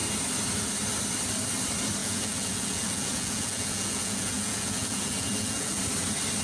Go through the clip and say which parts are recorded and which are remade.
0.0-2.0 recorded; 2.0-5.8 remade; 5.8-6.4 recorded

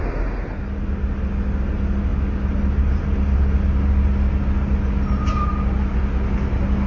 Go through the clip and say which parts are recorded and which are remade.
0.0-6.9 recorded